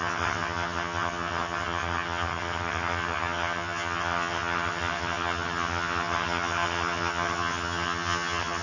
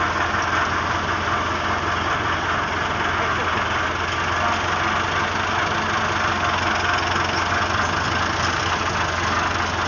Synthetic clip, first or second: first